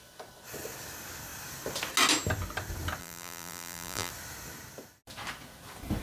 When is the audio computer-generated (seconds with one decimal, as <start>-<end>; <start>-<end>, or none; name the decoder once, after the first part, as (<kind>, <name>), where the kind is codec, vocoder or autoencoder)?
3.0-4.1 (vocoder, BigVGAN v2)